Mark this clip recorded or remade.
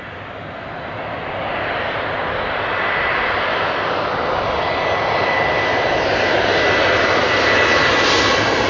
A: recorded